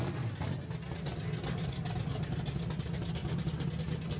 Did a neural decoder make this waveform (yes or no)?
no